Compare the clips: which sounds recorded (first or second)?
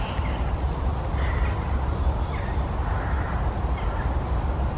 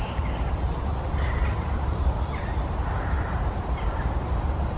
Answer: first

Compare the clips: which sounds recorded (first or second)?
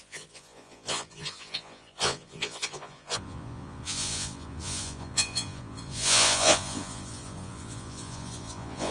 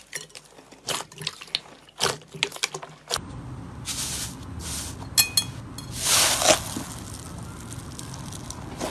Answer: second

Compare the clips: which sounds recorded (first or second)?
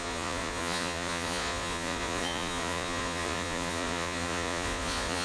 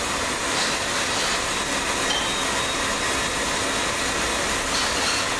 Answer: second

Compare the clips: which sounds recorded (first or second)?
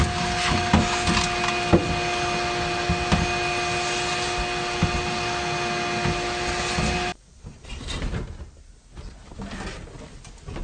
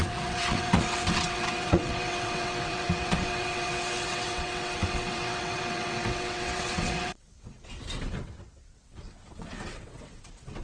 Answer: first